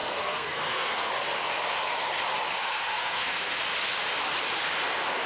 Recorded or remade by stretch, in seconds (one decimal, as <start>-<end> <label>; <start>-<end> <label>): 0.0-1.1 remade; 1.1-2.6 recorded; 2.6-3.6 remade; 3.6-5.3 recorded